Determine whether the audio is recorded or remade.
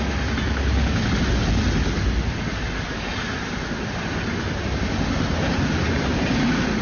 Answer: recorded